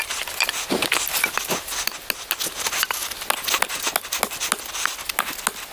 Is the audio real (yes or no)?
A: yes